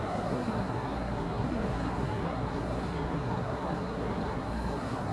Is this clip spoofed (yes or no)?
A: yes